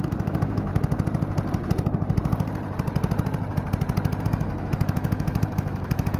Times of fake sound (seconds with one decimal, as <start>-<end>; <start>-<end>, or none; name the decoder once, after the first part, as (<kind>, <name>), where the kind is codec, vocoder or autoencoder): 0.0-0.7 (autoencoder, DAC-VAE); 4.2-6.2